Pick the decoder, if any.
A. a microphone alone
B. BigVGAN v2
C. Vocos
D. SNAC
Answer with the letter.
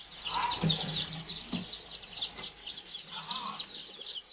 A